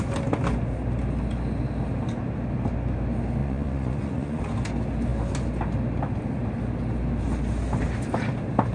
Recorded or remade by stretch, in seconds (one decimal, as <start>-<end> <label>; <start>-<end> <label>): 0.0-3.4 recorded; 3.4-4.4 remade; 4.4-8.7 recorded